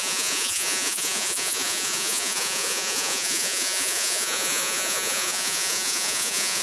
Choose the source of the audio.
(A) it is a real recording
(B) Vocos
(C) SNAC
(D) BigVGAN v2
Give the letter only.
B